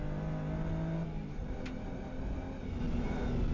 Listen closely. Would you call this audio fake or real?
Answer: real